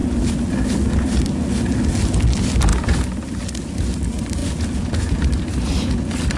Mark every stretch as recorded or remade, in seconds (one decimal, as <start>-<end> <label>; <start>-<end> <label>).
0.0-4.4 recorded; 4.4-5.2 remade; 5.2-6.4 recorded